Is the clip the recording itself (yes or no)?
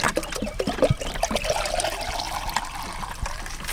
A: yes